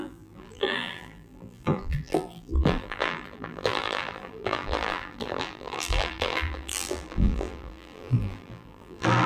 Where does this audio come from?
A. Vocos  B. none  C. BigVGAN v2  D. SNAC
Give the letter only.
C